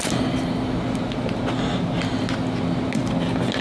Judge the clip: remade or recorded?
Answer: recorded